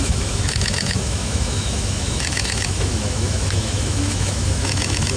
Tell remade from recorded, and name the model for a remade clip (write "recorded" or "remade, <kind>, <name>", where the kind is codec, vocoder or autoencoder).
remade, autoencoder, DAC-VAE